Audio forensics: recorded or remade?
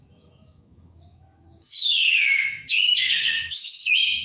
remade